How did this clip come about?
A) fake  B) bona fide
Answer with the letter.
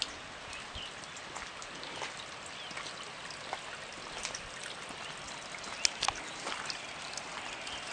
B